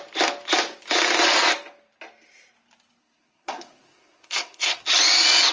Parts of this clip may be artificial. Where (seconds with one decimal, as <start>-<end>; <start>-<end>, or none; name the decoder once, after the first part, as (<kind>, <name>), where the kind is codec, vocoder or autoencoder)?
3.0-4.8 (codec, SNAC)